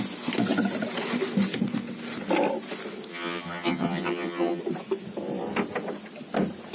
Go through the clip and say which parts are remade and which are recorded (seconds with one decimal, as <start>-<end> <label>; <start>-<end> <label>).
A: 0.0-3.1 recorded; 3.1-4.6 remade; 4.6-6.7 recorded